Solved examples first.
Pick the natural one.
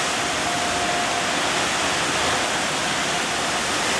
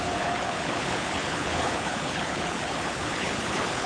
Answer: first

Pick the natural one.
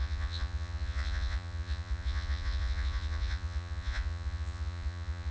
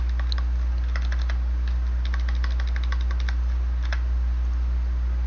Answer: second